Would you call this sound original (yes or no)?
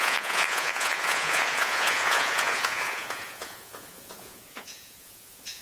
no